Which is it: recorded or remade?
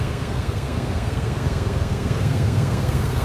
remade